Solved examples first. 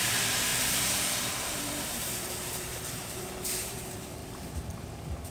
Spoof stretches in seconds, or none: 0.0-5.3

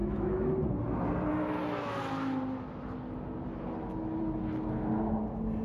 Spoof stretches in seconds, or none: 0.0-0.5

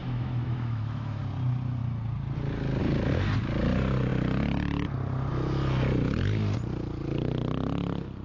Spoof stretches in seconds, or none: 0.0-1.2

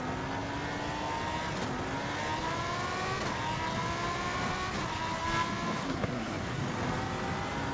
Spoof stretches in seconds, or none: 5.8-6.6

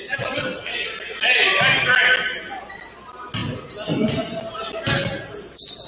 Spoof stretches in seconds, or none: none

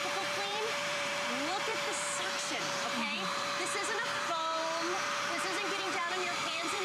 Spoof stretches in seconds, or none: 0.0-6.8

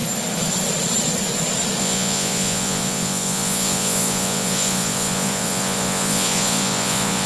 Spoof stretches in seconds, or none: 1.8-7.3

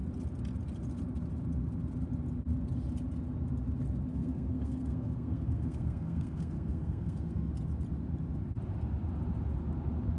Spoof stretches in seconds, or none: 4.1-7.5